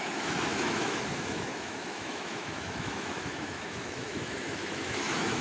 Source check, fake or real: fake